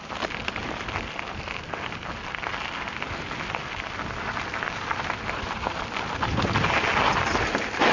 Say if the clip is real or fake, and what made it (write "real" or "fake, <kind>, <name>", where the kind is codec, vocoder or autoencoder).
real